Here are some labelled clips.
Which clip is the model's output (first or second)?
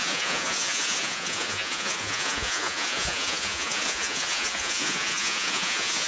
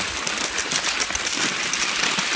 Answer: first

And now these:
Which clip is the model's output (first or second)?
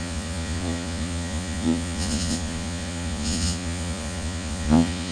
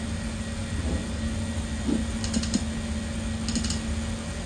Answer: first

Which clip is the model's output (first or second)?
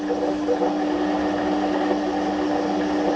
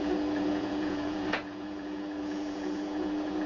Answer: second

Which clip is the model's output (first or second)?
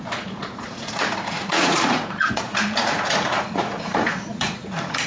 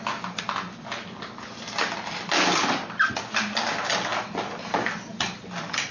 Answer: first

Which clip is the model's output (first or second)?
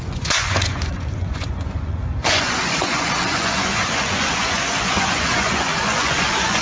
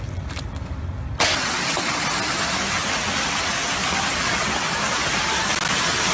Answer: first